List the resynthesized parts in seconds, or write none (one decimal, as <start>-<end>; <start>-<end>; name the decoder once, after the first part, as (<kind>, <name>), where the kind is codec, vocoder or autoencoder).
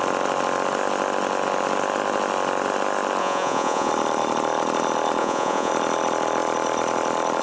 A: 3.2-3.9 (vocoder, Vocos); 5.2-5.7